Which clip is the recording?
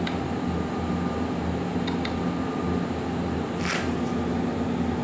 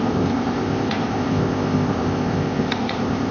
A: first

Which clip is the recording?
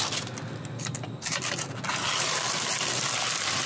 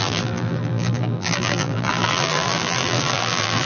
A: first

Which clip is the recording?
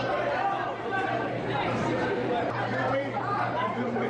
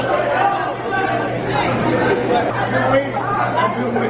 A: second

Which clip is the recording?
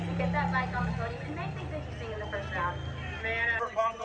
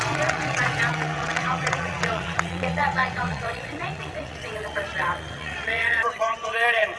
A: first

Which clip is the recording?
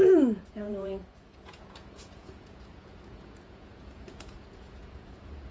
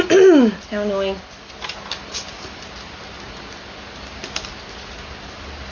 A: second